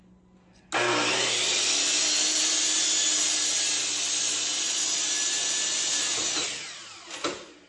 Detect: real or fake real